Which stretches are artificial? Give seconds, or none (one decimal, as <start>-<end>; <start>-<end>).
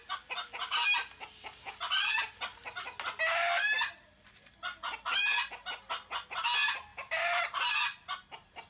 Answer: none